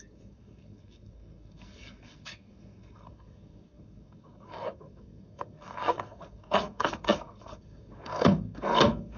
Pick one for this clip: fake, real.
fake